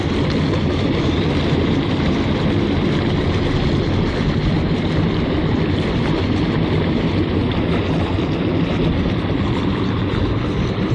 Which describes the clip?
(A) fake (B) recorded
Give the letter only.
B